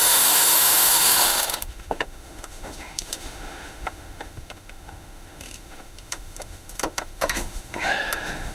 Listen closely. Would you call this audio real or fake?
fake